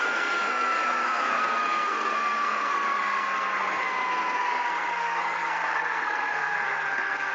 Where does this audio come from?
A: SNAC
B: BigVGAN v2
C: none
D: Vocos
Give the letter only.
A